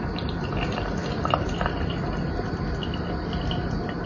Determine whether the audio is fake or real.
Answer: real